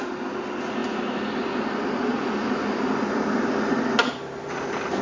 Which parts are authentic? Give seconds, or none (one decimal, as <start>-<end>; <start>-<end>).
0.0-5.0